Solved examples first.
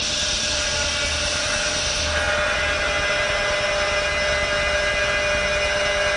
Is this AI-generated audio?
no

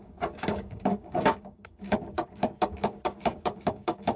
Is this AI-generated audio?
yes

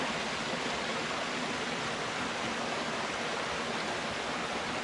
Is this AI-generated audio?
no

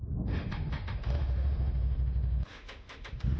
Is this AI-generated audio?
yes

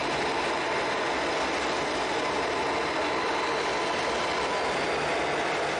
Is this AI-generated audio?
no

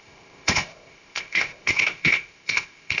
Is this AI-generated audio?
yes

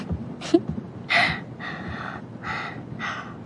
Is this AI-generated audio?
no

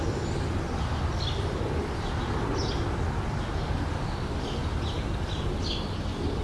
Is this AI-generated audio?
no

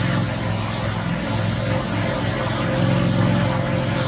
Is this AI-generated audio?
no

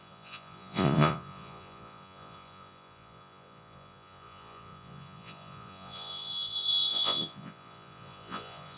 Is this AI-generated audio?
yes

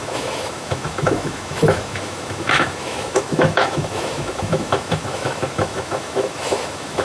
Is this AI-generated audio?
yes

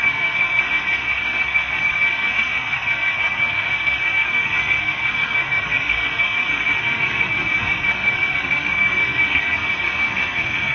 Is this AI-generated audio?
yes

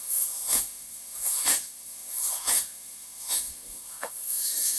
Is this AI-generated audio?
yes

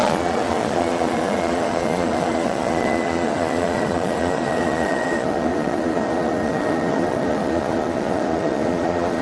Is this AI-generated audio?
yes